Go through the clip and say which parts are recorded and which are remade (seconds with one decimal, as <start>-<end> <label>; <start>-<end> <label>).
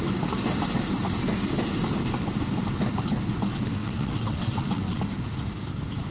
0.0-3.8 recorded; 3.8-5.0 remade; 5.0-6.1 recorded